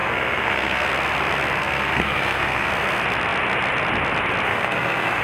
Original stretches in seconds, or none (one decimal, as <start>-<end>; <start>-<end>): 0.9-1.6; 2.7-4.5